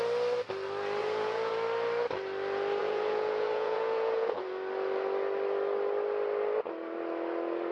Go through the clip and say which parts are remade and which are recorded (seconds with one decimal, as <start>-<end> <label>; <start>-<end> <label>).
0.0-1.0 recorded; 1.0-1.5 remade; 1.5-2.8 recorded; 2.8-4.4 remade; 4.4-7.7 recorded